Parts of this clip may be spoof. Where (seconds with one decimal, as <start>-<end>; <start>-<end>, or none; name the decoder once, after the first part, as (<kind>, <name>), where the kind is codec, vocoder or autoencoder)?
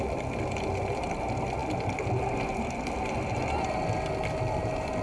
none